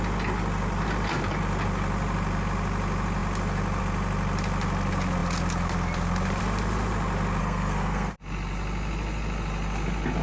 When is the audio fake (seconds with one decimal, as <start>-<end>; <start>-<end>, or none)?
7.4-8.1